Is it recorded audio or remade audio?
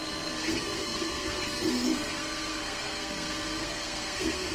remade